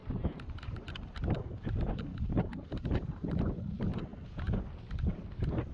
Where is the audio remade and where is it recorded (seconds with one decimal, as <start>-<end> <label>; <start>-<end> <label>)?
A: 0.0-4.1 remade; 4.1-4.7 recorded; 4.7-5.7 remade

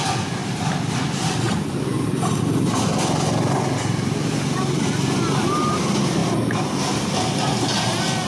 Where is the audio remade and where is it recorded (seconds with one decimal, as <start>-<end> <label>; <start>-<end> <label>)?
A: 0.0-0.4 recorded; 0.4-2.4 remade; 2.4-8.3 recorded

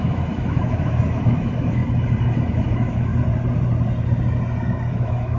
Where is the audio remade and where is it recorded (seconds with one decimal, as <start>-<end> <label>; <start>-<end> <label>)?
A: 0.0-1.8 remade; 1.8-2.5 recorded; 2.5-3.1 remade; 3.1-4.9 recorded; 4.9-5.4 remade

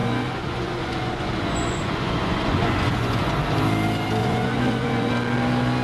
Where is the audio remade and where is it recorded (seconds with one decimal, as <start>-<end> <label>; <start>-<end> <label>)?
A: 0.0-3.3 remade; 3.3-4.2 recorded; 4.2-5.1 remade; 5.1-5.8 recorded

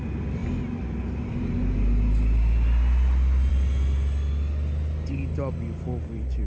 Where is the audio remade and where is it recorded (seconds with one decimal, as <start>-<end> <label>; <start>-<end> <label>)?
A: 0.0-6.5 recorded